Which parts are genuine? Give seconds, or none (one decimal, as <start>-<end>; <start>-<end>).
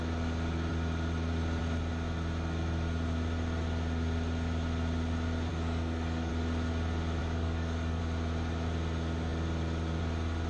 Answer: 0.0-5.5; 6.3-7.2; 8.0-10.5